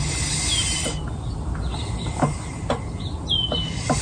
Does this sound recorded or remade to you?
recorded